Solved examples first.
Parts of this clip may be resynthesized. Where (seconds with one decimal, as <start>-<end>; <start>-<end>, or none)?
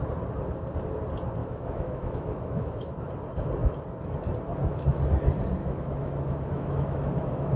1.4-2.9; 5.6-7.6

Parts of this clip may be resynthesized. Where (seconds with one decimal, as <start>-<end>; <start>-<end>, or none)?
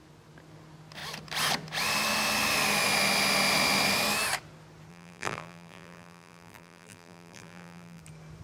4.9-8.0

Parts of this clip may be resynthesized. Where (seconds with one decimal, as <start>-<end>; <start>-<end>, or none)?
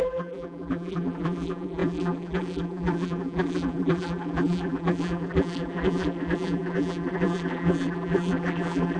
0.0-9.0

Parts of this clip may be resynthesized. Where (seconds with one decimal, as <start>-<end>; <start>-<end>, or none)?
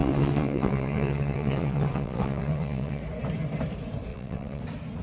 0.0-3.0; 4.1-4.6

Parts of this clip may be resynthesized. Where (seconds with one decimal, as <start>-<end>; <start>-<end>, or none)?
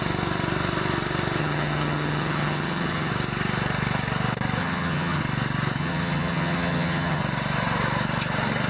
1.4-3.1; 4.6-5.2; 5.8-7.2